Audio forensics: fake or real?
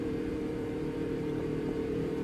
fake